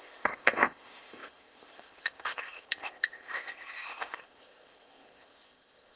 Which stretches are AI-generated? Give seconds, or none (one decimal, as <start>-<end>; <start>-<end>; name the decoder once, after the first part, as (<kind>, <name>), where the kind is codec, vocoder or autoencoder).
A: 0.0-6.0 (codec, ZipCodec)